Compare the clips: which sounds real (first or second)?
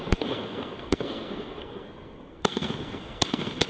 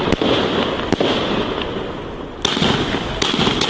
second